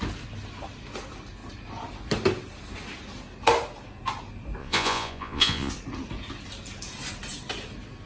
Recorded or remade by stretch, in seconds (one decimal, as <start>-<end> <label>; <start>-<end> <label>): 0.0-4.6 recorded; 4.6-5.7 remade; 5.7-8.1 recorded